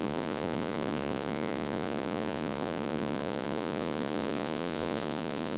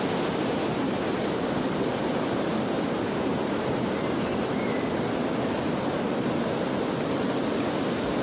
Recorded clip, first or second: second